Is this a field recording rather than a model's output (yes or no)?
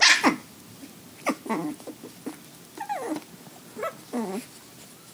yes